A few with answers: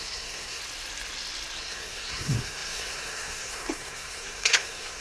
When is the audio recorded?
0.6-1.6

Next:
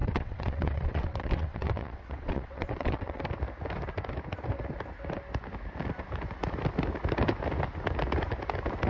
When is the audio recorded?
3.2-8.9

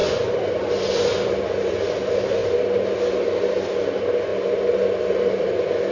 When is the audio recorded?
0.0-5.9

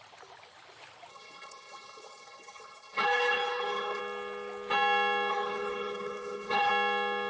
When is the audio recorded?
0.0-1.1; 4.0-5.3; 6.7-7.3

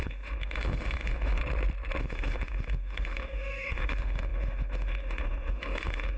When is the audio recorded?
1.4-2.0

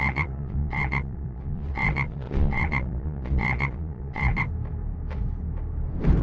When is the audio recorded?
4.3-6.2

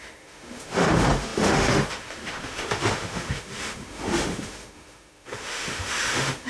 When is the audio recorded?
none

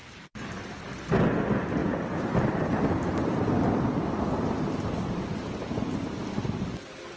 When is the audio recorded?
0.5-1.8; 6.1-7.2